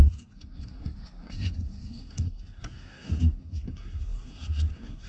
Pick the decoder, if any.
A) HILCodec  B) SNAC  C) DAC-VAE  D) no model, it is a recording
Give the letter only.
B